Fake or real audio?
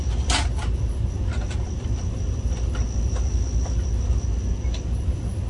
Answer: real